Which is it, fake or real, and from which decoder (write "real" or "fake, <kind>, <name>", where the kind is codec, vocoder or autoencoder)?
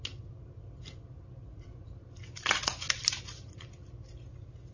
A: real